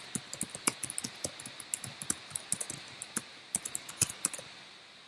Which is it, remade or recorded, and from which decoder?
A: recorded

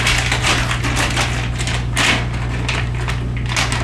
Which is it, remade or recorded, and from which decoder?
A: recorded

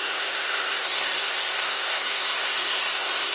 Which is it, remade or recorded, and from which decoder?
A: remade, codec, SNAC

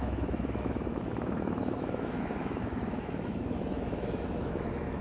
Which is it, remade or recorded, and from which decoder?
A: remade, autoencoder, DAC-VAE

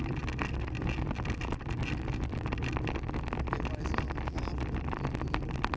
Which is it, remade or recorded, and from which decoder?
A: recorded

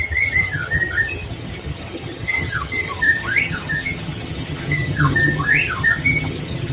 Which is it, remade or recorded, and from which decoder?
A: remade, vocoder, HiFi-GAN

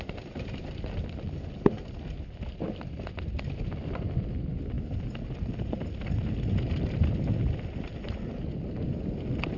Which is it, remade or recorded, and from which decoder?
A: recorded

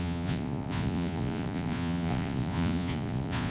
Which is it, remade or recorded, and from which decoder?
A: remade, vocoder, Vocos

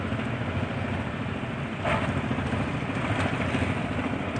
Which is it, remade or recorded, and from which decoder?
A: recorded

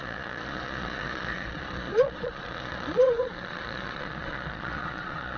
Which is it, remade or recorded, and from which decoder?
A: remade, vocoder, Vocos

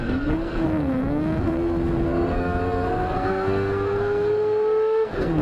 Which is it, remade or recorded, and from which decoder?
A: remade, codec, SNAC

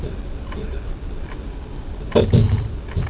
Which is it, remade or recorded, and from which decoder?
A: recorded